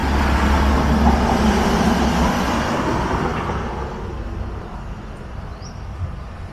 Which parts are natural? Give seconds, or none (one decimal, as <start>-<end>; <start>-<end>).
0.0-3.3; 4.5-6.5